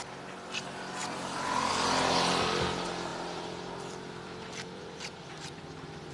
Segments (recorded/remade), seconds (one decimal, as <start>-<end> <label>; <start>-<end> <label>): 0.0-1.0 recorded; 1.0-1.7 remade; 1.7-3.1 recorded; 3.1-6.1 remade